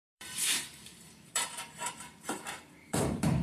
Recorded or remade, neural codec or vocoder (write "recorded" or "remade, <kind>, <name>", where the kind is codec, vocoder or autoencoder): remade, vocoder, BigVGAN v2